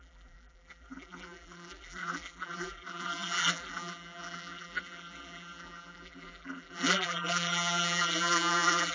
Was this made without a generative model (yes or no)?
no